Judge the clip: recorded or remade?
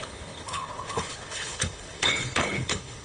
remade